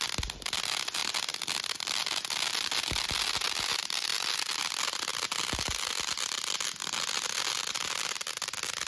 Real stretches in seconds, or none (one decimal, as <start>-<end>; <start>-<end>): 0.0-8.9